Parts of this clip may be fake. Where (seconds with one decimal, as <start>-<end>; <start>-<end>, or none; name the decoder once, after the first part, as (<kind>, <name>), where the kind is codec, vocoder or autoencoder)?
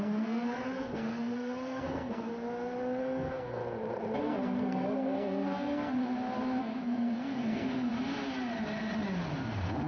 0.0-2.3 (codec, SNAC); 3.0-3.6; 4.2-6.0; 6.6-7.9